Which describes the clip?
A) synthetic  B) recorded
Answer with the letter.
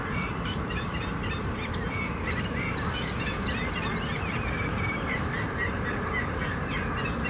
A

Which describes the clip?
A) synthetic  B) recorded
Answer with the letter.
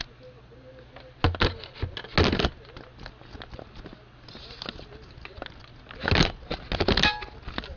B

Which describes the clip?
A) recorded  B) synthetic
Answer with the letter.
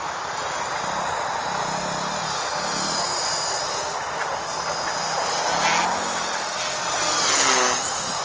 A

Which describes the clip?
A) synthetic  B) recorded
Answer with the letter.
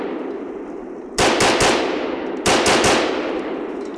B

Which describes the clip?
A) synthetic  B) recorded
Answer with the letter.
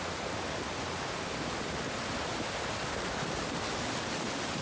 B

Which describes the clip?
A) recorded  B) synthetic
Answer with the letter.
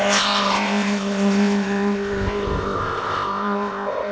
B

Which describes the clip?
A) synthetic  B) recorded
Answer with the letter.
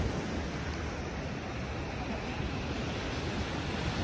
B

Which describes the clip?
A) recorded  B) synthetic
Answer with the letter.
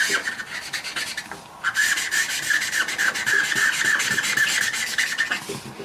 A